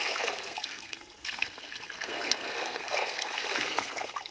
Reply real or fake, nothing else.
fake